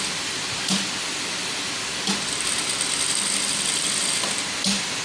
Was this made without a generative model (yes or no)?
yes